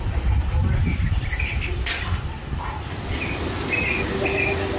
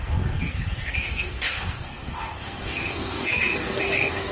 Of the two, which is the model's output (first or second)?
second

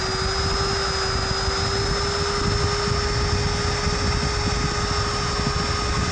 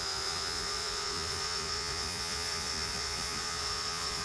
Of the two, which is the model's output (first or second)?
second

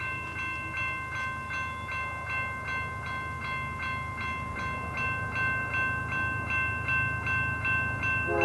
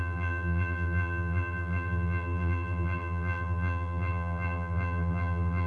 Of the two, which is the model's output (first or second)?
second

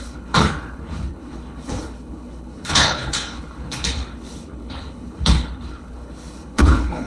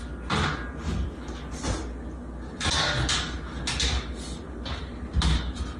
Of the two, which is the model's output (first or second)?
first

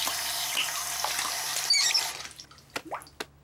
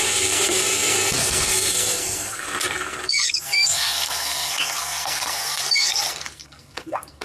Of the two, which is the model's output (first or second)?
second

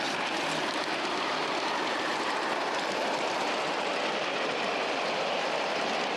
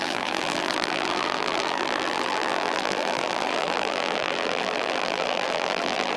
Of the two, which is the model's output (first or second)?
second